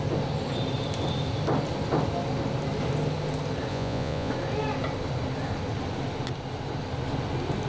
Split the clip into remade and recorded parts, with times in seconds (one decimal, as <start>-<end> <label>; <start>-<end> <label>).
0.0-3.7 recorded; 3.7-4.3 remade; 4.3-7.7 recorded